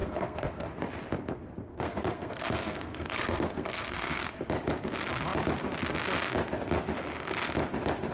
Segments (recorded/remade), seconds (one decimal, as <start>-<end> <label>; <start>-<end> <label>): 0.0-0.7 remade; 0.7-1.7 recorded; 1.7-4.3 remade; 4.3-8.1 recorded